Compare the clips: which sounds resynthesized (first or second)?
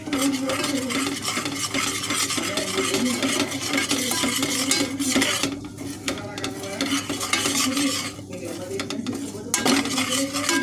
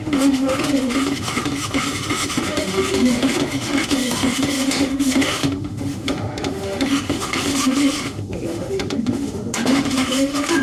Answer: second